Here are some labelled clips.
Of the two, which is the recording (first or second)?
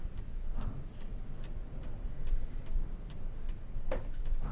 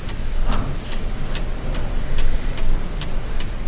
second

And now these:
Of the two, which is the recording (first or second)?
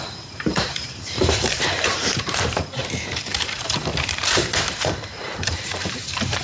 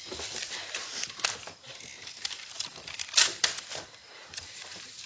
second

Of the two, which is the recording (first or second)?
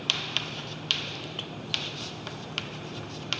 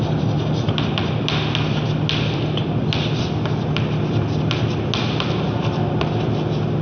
second